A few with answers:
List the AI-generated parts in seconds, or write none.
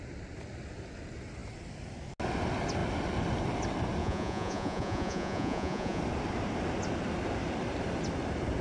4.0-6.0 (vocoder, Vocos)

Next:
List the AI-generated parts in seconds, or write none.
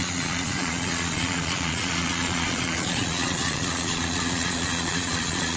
0.0-5.6 (vocoder, Vocos)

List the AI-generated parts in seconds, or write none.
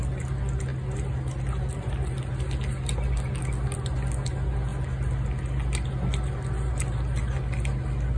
none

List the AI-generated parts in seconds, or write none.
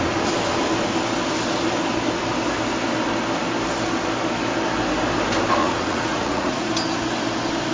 5.6-6.7 (vocoder, Vocos)